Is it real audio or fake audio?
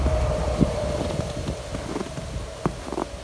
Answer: real